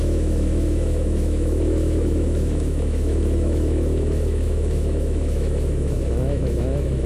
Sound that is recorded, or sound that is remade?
remade